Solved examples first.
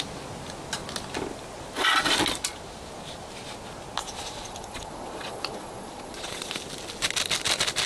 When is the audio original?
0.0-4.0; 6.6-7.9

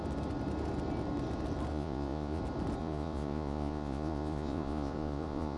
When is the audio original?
0.0-1.7; 2.4-2.8

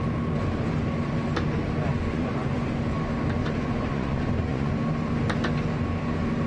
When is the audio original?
0.0-1.9; 2.8-3.4; 4.7-6.5

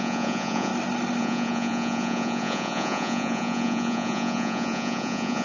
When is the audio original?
0.7-1.2

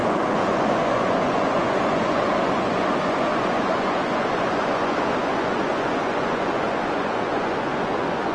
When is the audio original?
none

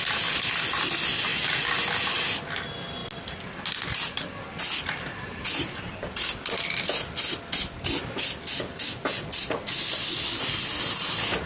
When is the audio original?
0.0-11.5